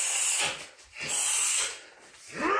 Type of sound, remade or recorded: recorded